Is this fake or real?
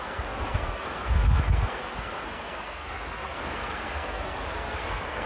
fake